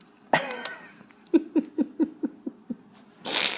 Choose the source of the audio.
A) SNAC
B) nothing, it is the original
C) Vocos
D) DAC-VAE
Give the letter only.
B